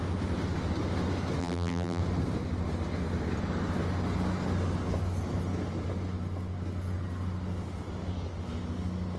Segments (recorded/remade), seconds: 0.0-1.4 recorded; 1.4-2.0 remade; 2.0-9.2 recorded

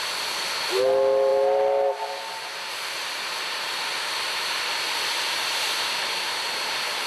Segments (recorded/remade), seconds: 0.0-7.1 recorded

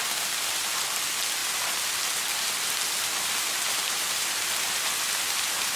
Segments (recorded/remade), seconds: 0.0-1.4 recorded; 1.4-2.0 remade; 2.0-3.8 recorded; 3.8-4.6 remade; 4.6-5.8 recorded

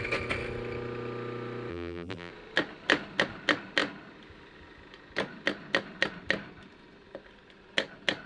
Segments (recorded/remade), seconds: 0.0-1.7 recorded; 1.7-2.3 remade; 2.3-8.3 recorded

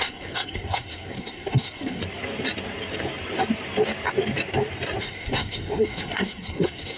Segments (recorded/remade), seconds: 0.0-2.0 remade; 2.0-5.0 recorded; 5.0-7.0 remade

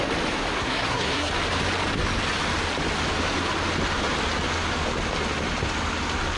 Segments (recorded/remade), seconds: 0.0-0.6 recorded; 0.6-1.3 remade; 1.3-6.4 recorded